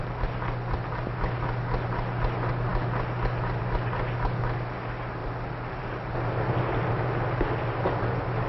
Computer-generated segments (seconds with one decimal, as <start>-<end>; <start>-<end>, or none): none